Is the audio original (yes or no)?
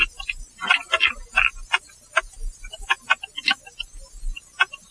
yes